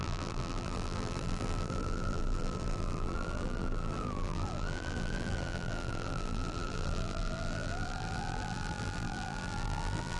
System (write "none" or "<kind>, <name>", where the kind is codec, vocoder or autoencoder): vocoder, BigVGAN v2